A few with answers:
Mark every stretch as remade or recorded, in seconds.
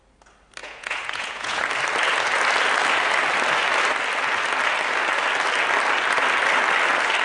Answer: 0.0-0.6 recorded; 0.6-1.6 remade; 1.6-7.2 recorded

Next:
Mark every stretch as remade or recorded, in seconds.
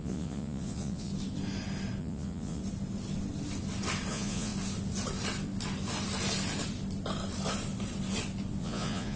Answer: 0.0-1.1 remade; 1.1-2.0 recorded; 2.0-2.6 remade; 2.6-4.1 recorded; 4.1-4.5 remade; 4.5-8.6 recorded; 8.6-9.2 remade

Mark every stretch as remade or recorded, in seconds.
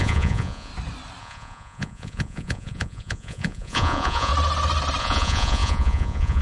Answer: 0.0-0.7 remade; 0.7-1.2 recorded; 1.2-4.3 remade; 4.3-5.0 recorded; 5.0-6.4 remade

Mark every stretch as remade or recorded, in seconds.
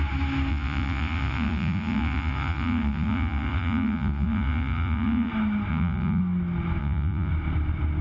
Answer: 0.0-0.5 recorded; 0.5-5.3 remade; 5.3-5.7 recorded; 5.7-6.2 remade; 6.2-6.8 recorded; 6.8-7.3 remade; 7.3-8.0 recorded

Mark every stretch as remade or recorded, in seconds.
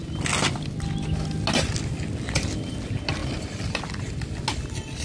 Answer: 0.0-5.0 recorded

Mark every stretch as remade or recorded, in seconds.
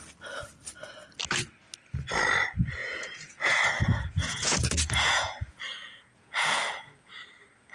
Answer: 0.0-2.8 recorded; 2.8-3.6 remade; 3.6-4.2 recorded; 4.2-6.7 remade; 6.7-7.7 recorded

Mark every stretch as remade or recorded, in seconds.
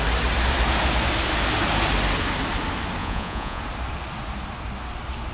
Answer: 0.0-3.0 recorded; 3.0-3.6 remade; 3.6-5.3 recorded